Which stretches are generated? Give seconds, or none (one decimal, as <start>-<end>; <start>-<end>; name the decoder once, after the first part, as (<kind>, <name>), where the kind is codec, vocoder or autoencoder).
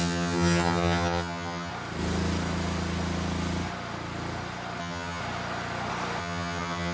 0.0-1.7 (vocoder, HiFi-GAN); 4.8-5.2; 6.2-6.9